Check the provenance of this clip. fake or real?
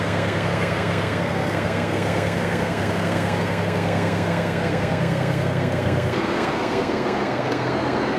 fake